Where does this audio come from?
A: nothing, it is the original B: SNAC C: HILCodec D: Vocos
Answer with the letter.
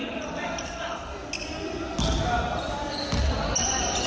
A